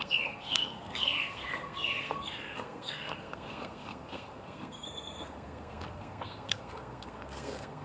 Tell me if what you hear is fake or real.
fake